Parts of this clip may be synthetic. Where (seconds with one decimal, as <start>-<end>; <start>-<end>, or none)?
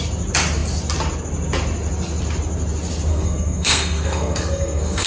3.1-5.1